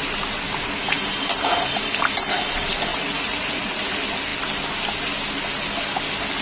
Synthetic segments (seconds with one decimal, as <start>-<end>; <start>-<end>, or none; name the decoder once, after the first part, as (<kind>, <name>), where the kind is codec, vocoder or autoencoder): 2.9-3.8 (vocoder, Vocos)